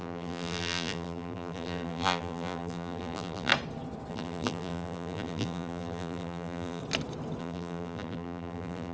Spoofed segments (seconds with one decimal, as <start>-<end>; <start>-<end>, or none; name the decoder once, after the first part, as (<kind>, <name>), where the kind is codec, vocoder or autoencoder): 0.0-3.5 (vocoder, BigVGAN v2); 4.1-6.8; 7.4-8.9